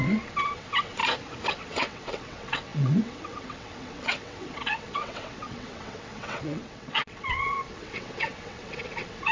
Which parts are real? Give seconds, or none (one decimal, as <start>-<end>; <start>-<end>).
1.0-1.5